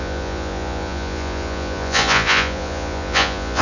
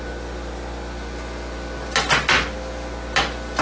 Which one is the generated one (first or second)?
first